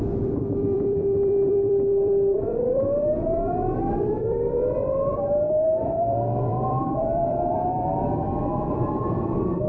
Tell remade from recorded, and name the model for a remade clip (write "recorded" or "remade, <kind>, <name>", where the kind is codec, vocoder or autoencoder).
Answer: remade, vocoder, BigVGAN v2